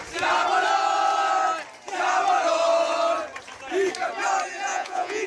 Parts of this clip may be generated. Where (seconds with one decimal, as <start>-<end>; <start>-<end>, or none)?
4.7-5.3